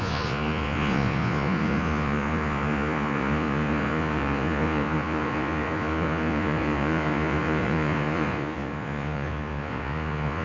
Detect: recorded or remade remade